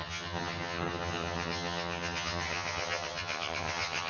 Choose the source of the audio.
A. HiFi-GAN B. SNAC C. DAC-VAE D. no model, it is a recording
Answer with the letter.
A